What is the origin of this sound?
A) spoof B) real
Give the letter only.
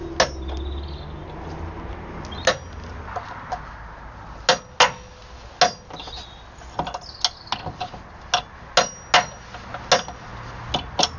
B